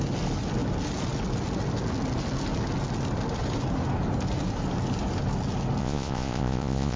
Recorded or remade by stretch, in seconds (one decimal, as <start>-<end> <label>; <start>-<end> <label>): 0.0-5.8 recorded; 5.8-7.0 remade